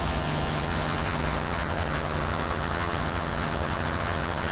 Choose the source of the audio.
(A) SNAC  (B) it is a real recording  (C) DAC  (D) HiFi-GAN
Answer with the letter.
D